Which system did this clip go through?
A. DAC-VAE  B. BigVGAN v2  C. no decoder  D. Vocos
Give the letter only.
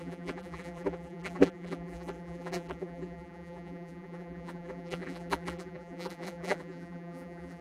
B